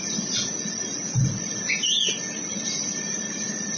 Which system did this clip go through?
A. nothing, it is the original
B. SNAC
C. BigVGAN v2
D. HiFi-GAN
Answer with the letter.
A